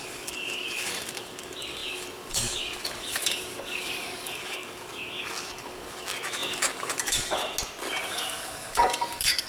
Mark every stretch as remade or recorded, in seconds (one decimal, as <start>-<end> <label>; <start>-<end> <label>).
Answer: 0.0-7.4 remade; 7.4-8.1 recorded; 8.1-9.5 remade